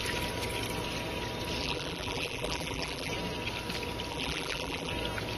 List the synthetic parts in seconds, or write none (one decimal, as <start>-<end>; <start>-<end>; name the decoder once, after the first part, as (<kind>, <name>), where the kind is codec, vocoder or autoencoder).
1.6-3.1 (vocoder, BigVGAN v2); 4.1-4.9